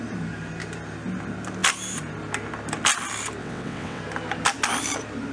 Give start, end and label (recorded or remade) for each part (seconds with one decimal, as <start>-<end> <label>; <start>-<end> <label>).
0.0-3.4 recorded; 3.4-4.0 remade; 4.0-5.3 recorded

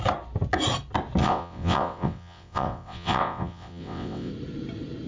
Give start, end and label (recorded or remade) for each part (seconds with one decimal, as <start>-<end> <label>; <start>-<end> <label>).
0.0-1.2 recorded; 1.2-4.3 remade; 4.3-5.1 recorded

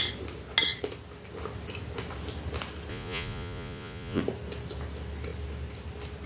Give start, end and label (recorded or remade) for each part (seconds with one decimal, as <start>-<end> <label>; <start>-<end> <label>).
0.0-2.9 recorded; 2.9-4.2 remade; 4.2-6.3 recorded

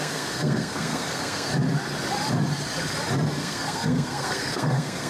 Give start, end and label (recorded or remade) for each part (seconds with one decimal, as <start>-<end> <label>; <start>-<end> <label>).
0.0-1.5 remade; 1.5-3.4 recorded; 3.4-5.1 remade

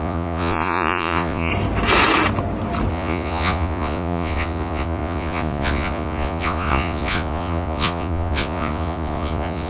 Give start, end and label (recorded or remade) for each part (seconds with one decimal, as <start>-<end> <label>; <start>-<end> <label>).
0.0-1.5 remade; 1.5-2.9 recorded; 2.9-9.7 remade

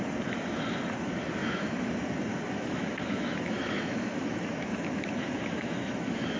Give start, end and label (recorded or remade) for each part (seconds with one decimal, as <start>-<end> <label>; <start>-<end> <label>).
0.0-1.4 recorded; 1.4-1.9 remade; 1.9-2.3 recorded; 2.3-6.4 remade

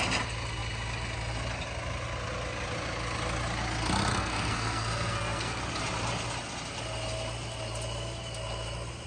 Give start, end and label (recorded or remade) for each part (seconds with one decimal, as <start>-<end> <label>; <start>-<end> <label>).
0.0-4.1 recorded; 4.1-5.6 remade; 5.6-9.1 recorded

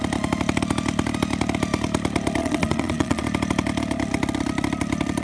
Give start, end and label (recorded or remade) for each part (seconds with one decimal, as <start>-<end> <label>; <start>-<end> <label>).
0.0-2.4 recorded; 2.4-3.2 remade; 3.2-5.2 recorded